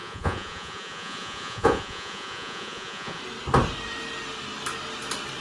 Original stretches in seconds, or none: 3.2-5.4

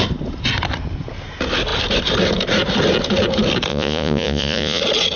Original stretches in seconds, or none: 0.0-3.7; 4.8-5.2

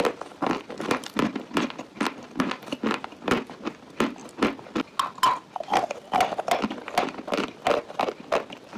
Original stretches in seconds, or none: 0.0-8.8

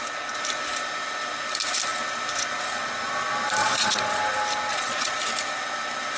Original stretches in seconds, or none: 0.0-3.6; 4.2-4.7; 5.2-6.2

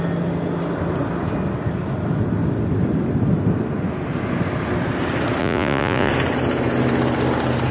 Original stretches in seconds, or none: 0.0-5.4; 6.1-7.7

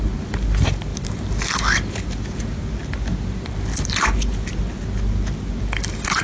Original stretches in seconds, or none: 0.0-6.2

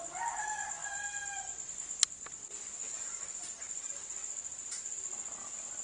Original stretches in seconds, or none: 0.0-2.8; 3.9-5.8

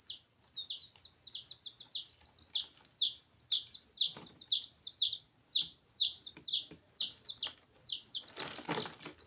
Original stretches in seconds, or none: 0.0-9.3